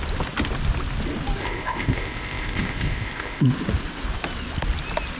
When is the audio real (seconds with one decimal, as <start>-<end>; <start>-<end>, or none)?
0.0-1.4; 3.4-5.2